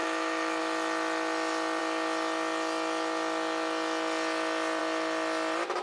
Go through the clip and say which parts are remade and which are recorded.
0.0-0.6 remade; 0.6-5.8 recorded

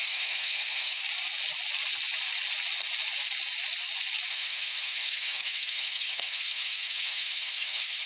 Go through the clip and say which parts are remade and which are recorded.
0.0-1.0 remade; 1.0-4.3 recorded; 4.3-8.1 remade